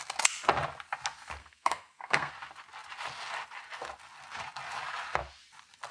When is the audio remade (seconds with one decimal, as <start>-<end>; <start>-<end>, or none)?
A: 1.4-2.3